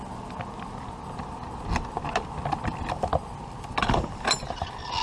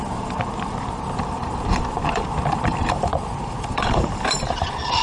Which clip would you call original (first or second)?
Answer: first